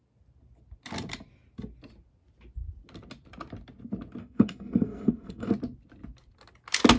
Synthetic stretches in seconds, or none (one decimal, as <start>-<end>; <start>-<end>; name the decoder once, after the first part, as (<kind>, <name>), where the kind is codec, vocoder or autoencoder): 4.2-5.5 (codec, SNAC)